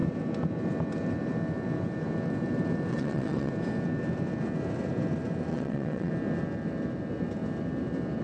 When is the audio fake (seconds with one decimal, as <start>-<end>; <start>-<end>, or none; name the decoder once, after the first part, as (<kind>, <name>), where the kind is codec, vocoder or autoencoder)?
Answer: 2.9-3.5 (vocoder, WaveNeXt); 5.5-6.1